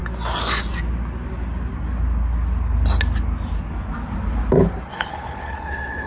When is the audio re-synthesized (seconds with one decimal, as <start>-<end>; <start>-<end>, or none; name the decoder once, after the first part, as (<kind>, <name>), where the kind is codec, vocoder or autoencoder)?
4.9-6.1 (codec, HILCodec)